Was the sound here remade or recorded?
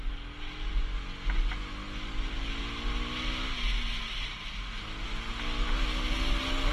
recorded